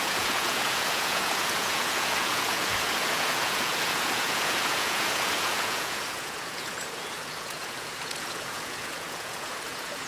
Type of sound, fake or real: fake